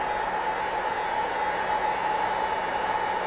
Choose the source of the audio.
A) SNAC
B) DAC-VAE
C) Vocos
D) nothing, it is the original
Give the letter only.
D